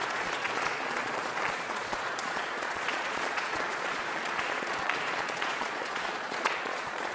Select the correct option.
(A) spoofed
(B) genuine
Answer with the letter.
A